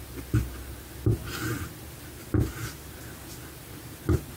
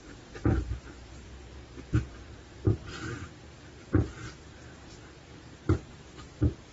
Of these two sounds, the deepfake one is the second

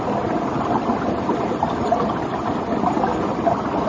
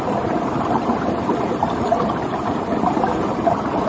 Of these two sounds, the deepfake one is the second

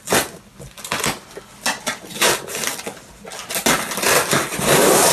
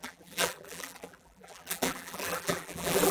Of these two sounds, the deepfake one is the second